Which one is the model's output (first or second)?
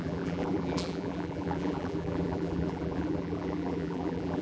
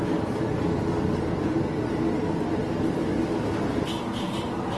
first